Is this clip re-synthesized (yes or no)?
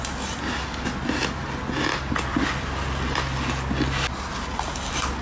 no